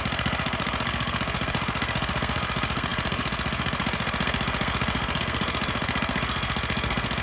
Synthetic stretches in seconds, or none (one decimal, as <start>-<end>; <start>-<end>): 0.0-7.2